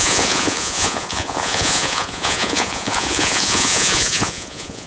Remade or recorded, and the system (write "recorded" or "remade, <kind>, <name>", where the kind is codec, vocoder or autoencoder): remade, vocoder, Vocos